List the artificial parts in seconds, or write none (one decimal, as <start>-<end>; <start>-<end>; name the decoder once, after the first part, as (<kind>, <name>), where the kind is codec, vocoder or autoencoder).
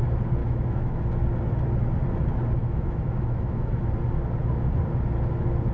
0.4-1.1 (autoencoder, DAC-VAE); 2.6-3.8